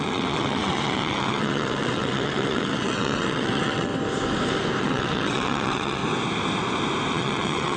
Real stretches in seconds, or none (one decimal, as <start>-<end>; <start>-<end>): 3.9-4.8; 6.0-7.1